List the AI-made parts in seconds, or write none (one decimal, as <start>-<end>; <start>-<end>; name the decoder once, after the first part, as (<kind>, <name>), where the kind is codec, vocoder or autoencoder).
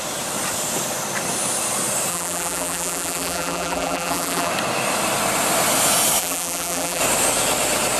2.1-4.5 (vocoder, BigVGAN v2); 6.2-7.0